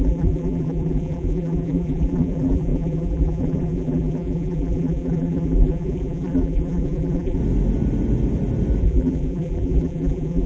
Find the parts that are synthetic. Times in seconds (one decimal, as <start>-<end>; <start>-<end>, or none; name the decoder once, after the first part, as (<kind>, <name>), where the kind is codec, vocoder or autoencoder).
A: 0.0-7.4 (vocoder, BigVGAN v2); 8.8-10.5